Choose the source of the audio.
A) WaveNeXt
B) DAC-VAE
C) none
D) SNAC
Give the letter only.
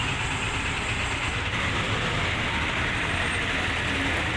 C